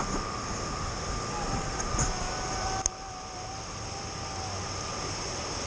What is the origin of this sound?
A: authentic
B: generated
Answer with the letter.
A